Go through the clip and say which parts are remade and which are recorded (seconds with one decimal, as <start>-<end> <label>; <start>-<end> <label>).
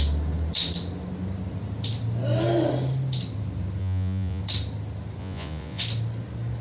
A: 0.0-3.8 recorded; 3.8-4.4 remade; 4.4-5.2 recorded; 5.2-5.8 remade; 5.8-6.6 recorded